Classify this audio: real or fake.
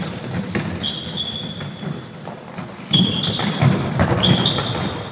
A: real